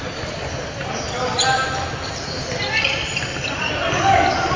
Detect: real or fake real